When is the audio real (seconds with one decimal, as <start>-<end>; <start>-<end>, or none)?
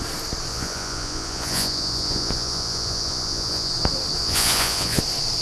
0.0-0.5; 3.7-4.2; 5.0-5.4